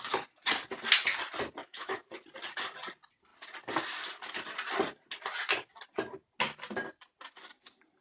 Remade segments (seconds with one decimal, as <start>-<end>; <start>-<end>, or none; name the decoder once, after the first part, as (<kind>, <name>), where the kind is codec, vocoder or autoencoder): 1.6-2.1 (autoencoder, DAC-VAE)